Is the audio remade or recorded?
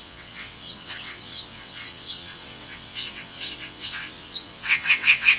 remade